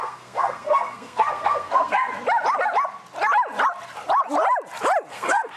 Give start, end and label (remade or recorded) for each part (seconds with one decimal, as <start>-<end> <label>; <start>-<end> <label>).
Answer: 0.0-2.1 remade; 2.1-5.1 recorded; 5.1-5.6 remade

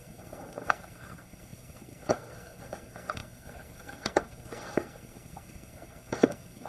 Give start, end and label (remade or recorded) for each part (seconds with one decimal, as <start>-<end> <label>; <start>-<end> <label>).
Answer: 0.0-6.7 remade

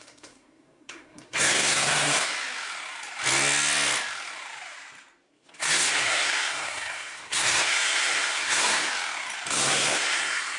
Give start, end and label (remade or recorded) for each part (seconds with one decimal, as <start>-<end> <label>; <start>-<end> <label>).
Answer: 0.0-2.3 remade; 2.3-5.3 recorded; 5.3-8.9 remade; 8.9-9.5 recorded; 9.5-10.6 remade

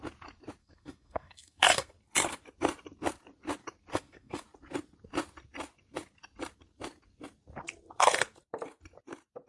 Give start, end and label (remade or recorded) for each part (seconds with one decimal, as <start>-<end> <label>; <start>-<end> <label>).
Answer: 0.0-0.6 recorded; 0.6-1.9 remade; 1.9-3.9 recorded; 3.9-4.4 remade; 4.4-9.5 recorded

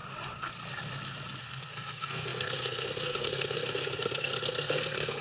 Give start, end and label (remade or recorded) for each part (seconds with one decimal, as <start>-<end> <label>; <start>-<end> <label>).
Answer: 0.0-1.4 recorded; 1.4-5.2 remade

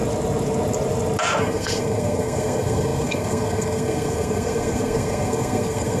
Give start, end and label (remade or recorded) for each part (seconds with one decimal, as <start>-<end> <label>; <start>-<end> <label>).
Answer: 0.0-1.4 recorded; 1.4-6.0 remade

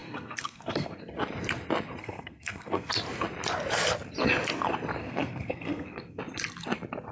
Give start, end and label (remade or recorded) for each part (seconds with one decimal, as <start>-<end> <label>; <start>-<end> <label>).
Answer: 0.0-1.0 remade; 1.0-2.0 recorded; 2.0-2.9 remade; 2.9-5.0 recorded; 5.0-6.2 remade; 6.2-7.1 recorded